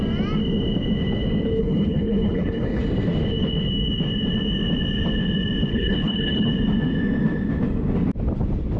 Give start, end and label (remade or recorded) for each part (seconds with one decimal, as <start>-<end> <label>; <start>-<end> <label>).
0.0-1.6 recorded; 1.6-2.8 remade; 2.8-5.7 recorded; 5.7-6.5 remade; 6.5-8.8 recorded